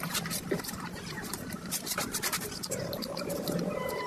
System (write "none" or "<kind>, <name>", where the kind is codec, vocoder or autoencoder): vocoder, BigVGAN v2